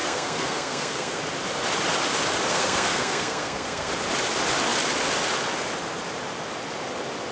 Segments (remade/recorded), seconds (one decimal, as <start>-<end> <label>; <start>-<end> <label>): 0.0-1.2 remade; 1.2-2.5 recorded; 2.5-3.9 remade; 3.9-7.3 recorded